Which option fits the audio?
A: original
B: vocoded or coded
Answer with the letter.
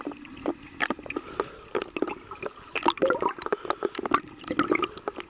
A